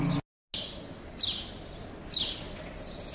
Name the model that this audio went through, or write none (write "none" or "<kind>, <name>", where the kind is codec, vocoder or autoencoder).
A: none